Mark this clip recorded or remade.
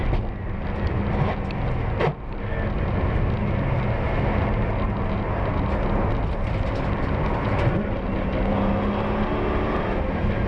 recorded